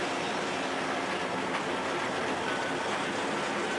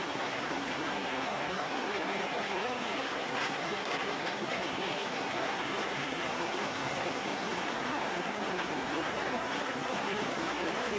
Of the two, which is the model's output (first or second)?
second